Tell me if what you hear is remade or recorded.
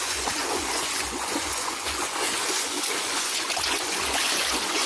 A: remade